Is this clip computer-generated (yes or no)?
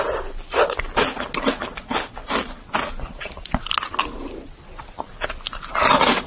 no